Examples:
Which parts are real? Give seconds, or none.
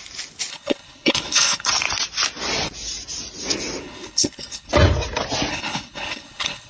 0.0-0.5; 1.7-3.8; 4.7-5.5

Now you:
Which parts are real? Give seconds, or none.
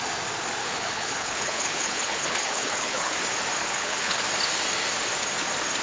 0.0-0.6; 3.1-3.6; 4.2-5.8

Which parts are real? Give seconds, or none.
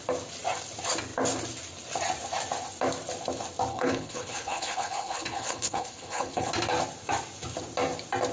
0.0-3.7; 6.5-8.3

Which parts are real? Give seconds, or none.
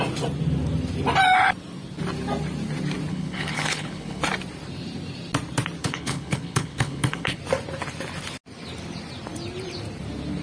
0.0-3.1; 4.2-5.8; 7.4-10.4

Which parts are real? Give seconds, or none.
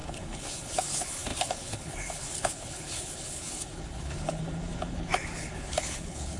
none